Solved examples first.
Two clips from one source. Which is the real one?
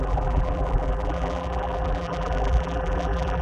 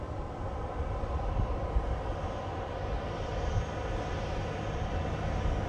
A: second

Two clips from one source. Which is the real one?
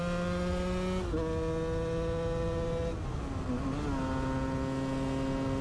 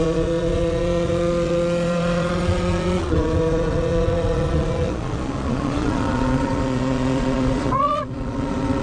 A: first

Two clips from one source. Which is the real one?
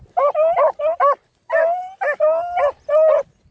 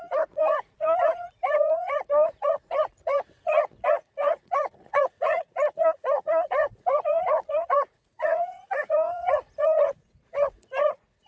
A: first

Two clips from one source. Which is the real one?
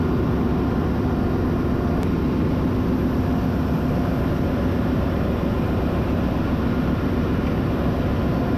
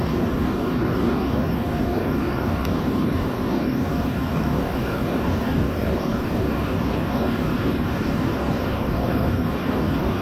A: first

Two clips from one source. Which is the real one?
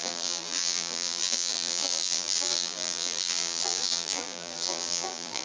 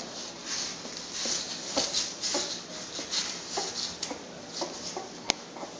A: second